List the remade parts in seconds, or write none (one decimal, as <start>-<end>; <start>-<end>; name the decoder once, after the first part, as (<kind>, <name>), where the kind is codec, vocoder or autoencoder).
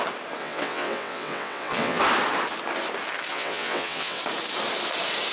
0.4-2.0 (vocoder, WaveNeXt); 3.3-4.2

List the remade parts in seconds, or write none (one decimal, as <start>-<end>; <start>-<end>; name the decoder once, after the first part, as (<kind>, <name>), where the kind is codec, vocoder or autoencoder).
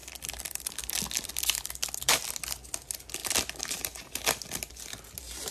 none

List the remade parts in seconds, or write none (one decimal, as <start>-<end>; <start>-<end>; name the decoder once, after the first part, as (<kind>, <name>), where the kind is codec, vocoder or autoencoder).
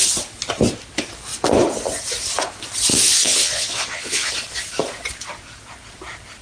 2.9-4.3 (vocoder, Vocos)